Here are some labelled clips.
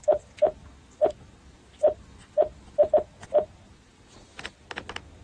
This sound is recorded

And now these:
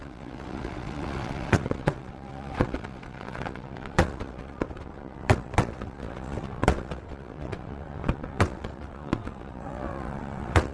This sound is remade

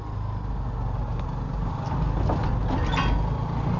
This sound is recorded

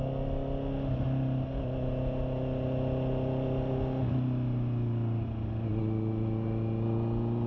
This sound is recorded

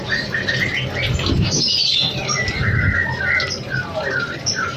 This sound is recorded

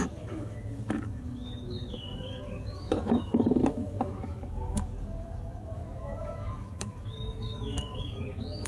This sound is remade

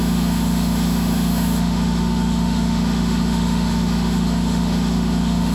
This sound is remade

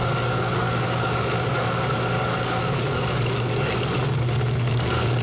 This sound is remade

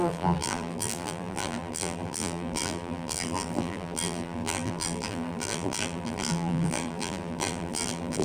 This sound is remade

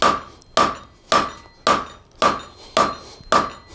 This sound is recorded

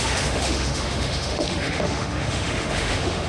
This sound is remade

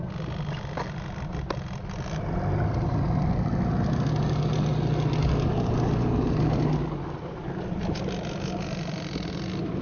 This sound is recorded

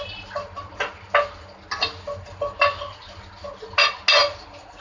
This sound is recorded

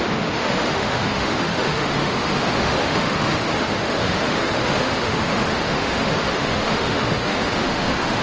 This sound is remade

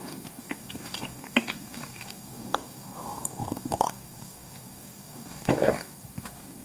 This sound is remade